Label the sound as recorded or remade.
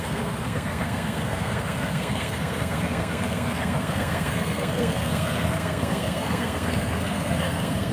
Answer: remade